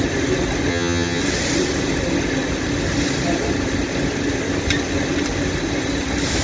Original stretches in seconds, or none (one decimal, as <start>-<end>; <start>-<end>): 0.0-0.7; 1.2-6.4